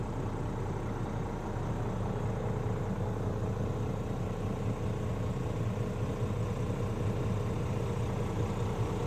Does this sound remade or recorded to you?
recorded